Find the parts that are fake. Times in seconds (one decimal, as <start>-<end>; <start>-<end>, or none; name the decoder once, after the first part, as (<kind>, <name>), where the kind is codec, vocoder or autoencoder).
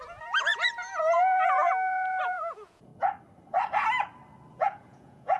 0.0-2.9 (vocoder, Vocos); 4.5-5.4